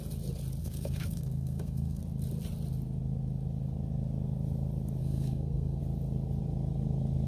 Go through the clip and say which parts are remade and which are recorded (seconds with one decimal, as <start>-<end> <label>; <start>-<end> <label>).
0.0-0.6 recorded; 0.6-2.0 remade; 2.0-5.0 recorded; 5.0-5.8 remade; 5.8-7.3 recorded